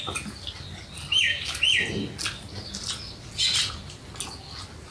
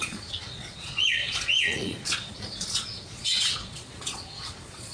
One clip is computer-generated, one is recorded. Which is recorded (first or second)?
first